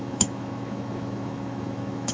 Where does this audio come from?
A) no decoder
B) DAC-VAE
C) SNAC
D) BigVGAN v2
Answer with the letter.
B